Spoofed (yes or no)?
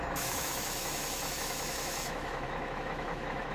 yes